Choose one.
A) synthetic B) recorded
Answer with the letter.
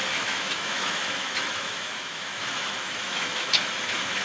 A